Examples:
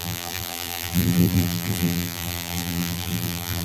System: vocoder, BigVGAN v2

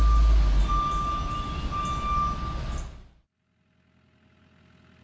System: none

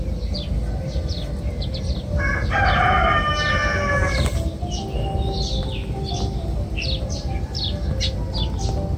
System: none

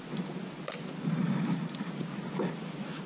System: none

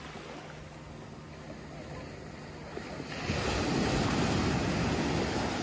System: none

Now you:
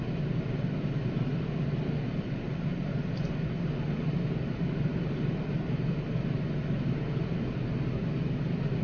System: none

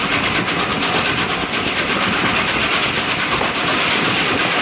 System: none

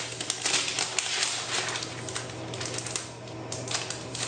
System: none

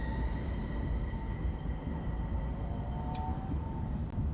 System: none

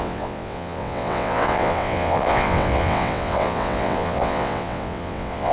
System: vocoder, WaveNeXt